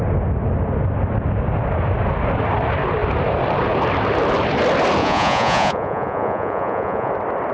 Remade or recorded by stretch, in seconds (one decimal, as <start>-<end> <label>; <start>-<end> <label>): 0.0-5.0 recorded; 5.0-7.1 remade; 7.1-7.5 recorded